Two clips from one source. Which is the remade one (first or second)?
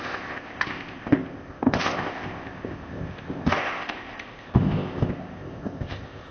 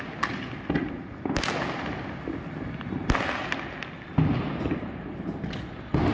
first